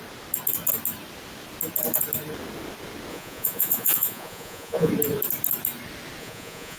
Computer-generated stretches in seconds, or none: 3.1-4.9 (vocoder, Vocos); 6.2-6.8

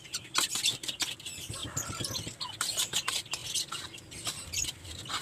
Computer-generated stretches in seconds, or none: 0.0-1.6 (vocoder, BigVGAN v2); 2.6-3.4

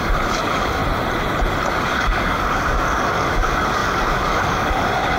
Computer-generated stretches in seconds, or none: 0.0-0.8 (codec, DAC); 1.8-5.2